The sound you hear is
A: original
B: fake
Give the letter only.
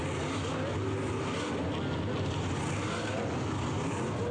A